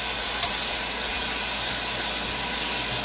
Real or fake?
real